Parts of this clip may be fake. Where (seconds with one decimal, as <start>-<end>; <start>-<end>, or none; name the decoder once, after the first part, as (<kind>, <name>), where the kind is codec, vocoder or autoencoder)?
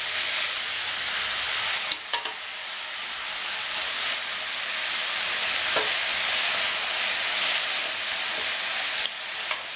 none